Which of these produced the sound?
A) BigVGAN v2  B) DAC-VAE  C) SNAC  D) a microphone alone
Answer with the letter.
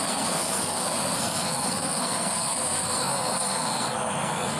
C